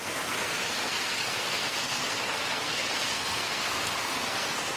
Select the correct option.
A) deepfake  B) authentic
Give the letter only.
A